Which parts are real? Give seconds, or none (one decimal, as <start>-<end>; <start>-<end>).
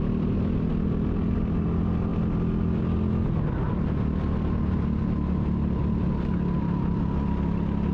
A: 0.0-7.9